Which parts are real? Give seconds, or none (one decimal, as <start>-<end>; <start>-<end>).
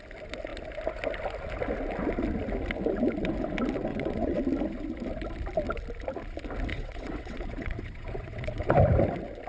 0.0-3.9; 4.4-6.7; 8.7-9.5